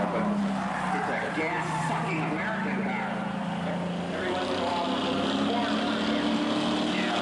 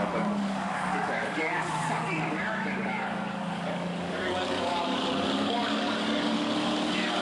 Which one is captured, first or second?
first